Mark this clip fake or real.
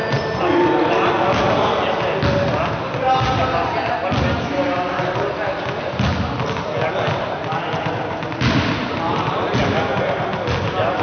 real